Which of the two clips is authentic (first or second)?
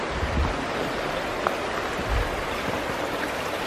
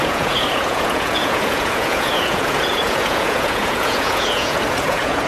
first